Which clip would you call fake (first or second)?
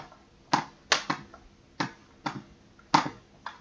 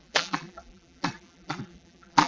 second